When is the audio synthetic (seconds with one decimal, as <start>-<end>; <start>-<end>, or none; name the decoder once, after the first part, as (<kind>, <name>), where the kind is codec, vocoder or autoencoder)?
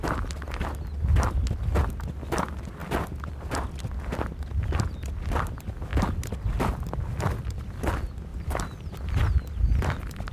none